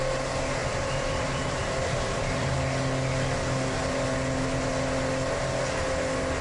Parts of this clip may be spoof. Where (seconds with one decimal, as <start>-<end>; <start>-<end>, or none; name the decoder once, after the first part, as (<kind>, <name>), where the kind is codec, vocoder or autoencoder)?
0.6-2.5 (vocoder, BigVGAN v2)